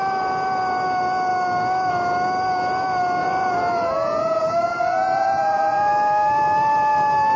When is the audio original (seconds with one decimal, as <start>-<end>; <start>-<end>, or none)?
0.0-3.2; 5.9-7.4